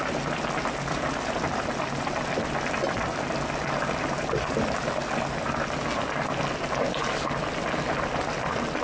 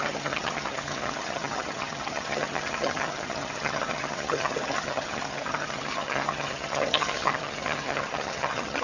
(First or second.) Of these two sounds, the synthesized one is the second